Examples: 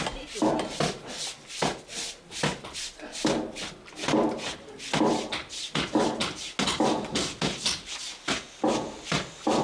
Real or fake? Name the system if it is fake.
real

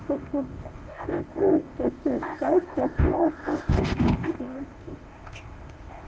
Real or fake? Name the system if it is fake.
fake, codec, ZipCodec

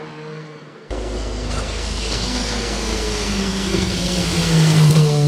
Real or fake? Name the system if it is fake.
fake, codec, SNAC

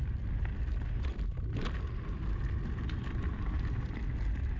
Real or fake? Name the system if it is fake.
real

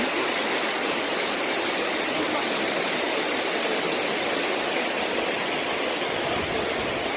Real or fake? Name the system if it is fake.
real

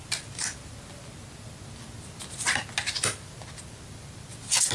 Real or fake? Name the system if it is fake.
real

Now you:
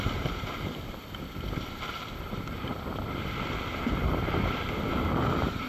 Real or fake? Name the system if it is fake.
fake, vocoder, BigVGAN v2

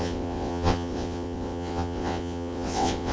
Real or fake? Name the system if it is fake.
fake, vocoder, WaveNeXt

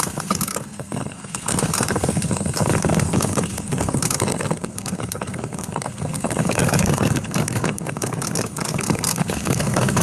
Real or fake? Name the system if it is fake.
fake, codec, SNAC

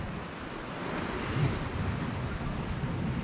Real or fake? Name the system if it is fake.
real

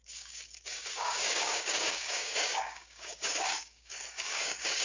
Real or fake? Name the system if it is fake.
fake, codec, DAC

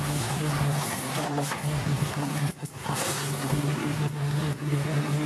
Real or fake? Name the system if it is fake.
fake, codec, SNAC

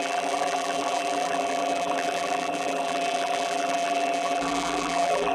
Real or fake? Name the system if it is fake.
fake, vocoder, BigVGAN v2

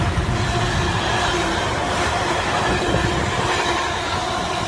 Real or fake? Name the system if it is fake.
real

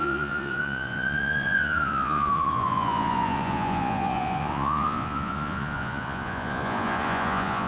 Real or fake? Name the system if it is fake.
fake, vocoder, Vocos